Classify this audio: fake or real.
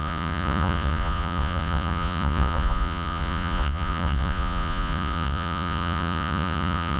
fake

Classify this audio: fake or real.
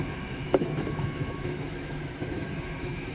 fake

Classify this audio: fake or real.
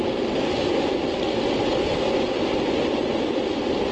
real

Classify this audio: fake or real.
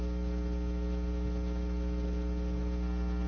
real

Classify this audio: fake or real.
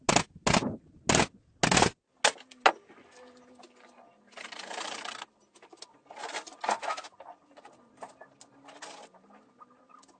real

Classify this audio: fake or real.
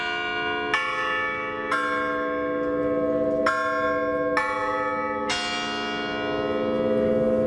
real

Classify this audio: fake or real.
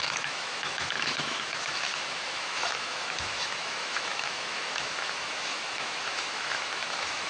fake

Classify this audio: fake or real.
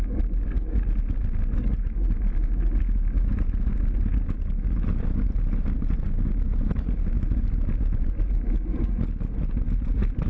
real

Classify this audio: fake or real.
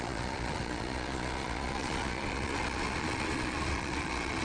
fake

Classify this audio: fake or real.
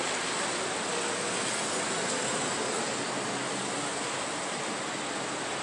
real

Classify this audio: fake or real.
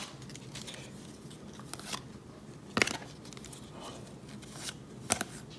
real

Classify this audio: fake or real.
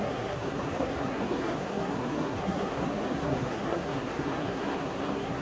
fake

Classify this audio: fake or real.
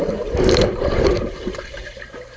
fake